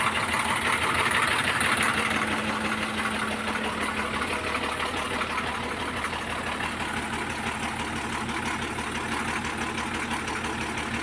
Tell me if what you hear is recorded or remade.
recorded